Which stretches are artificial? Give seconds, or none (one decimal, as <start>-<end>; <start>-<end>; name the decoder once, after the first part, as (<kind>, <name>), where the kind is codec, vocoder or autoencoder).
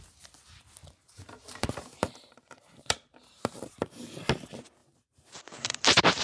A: 0.8-4.1 (vocoder, BigVGAN v2); 4.8-6.2